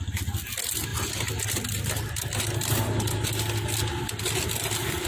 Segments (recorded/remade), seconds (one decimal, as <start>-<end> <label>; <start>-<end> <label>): 0.0-5.1 recorded